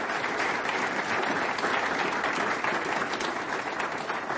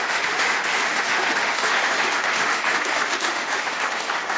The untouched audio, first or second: first